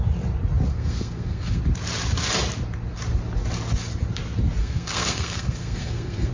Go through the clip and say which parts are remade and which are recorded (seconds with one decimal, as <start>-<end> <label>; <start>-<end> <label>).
0.0-0.7 recorded; 0.7-1.6 remade; 1.6-4.6 recorded; 4.6-6.3 remade